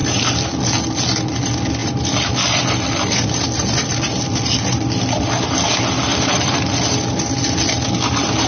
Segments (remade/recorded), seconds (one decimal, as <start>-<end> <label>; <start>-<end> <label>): 0.0-0.6 remade; 0.6-1.8 recorded; 1.8-5.3 remade; 5.3-6.1 recorded; 6.1-7.4 remade; 7.4-8.5 recorded